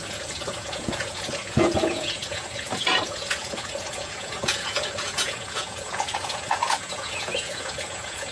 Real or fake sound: fake